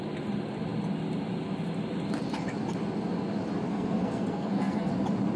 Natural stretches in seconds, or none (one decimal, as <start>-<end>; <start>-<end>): 0.0-3.7; 4.9-5.4